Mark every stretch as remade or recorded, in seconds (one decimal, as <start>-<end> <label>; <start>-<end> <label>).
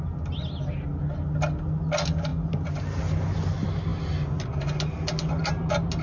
0.0-6.0 recorded